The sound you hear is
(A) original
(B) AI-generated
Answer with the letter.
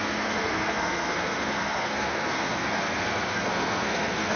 B